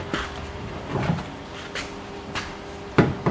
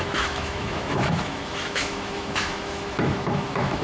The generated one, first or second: second